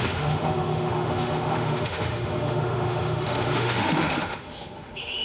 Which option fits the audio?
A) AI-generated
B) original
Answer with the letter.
A